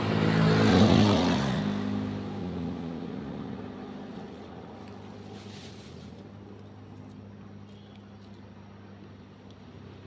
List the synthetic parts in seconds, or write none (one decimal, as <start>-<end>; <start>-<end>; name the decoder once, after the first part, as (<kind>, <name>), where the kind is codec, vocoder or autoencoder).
0.7-1.6 (vocoder, Vocos); 2.4-3.6; 4.1-4.8; 5.6-6.2